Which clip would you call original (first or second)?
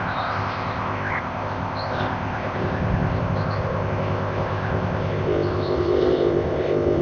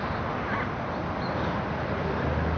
second